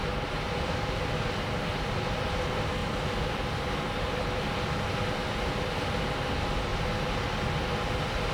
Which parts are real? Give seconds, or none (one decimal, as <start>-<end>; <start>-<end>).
0.0-2.8; 3.6-8.3